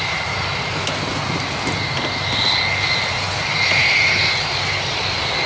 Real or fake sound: real